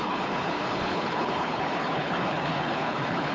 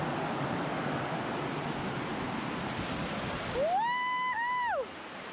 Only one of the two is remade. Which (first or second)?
first